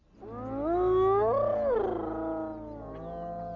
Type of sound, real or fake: real